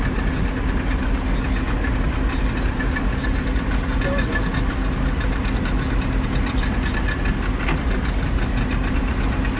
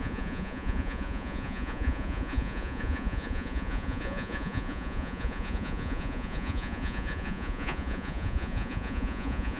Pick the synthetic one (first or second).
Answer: second